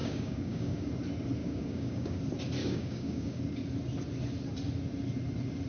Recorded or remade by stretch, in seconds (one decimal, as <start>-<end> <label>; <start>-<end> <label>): 0.0-0.9 remade; 0.9-1.4 recorded; 1.4-2.2 remade; 2.2-2.6 recorded; 2.6-3.4 remade; 3.4-5.7 recorded